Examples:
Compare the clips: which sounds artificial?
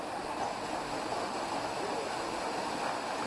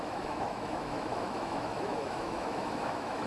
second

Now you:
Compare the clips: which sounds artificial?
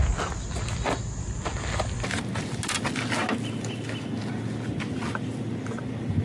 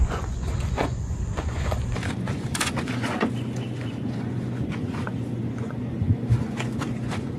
second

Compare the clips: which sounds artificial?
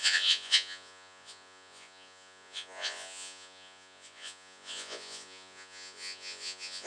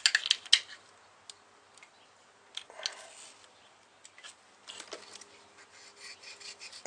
first